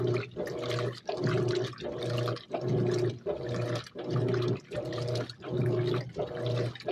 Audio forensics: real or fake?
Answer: real